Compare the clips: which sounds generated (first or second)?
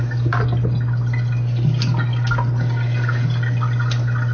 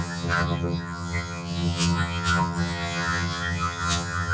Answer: second